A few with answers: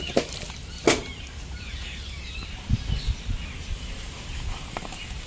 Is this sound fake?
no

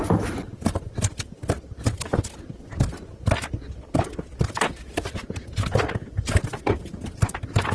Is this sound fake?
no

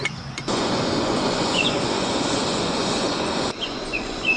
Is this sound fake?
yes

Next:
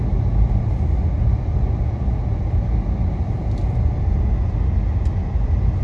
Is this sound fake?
no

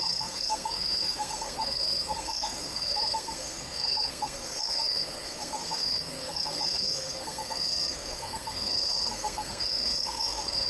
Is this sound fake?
yes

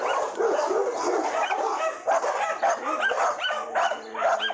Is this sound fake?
no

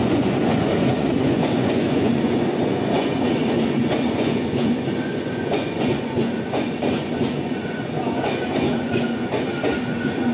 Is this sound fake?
yes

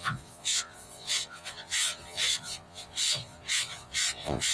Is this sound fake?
yes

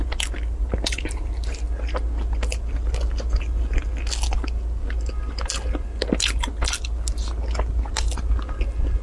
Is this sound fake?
no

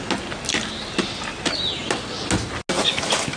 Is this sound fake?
no